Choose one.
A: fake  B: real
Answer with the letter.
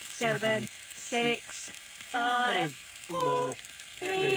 A